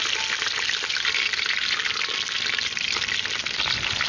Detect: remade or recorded recorded